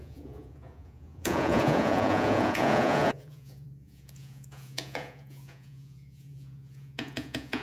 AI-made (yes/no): yes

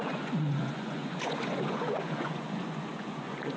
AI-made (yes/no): yes